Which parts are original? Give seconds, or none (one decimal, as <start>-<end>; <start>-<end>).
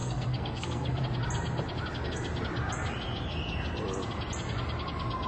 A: 1.0-5.3